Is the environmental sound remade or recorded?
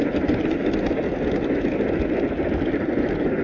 recorded